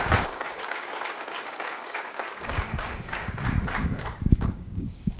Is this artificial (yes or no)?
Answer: yes